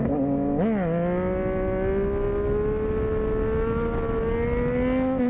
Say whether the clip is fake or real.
real